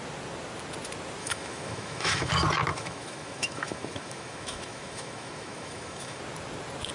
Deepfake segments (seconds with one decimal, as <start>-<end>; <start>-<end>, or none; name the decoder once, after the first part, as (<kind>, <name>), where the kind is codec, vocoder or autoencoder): 1.2-2.3 (autoencoder, DAC-VAE); 2.7-6.2